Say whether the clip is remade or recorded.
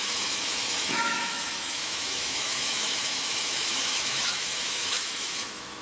remade